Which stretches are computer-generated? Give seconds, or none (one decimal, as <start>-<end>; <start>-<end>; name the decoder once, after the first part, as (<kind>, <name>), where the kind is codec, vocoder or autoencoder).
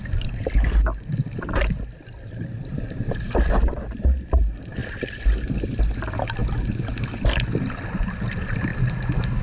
none